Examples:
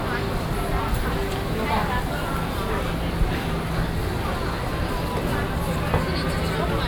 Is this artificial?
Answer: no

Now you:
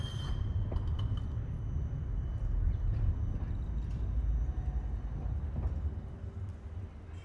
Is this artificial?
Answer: no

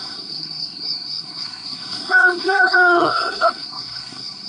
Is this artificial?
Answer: yes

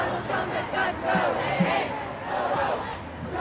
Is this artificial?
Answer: no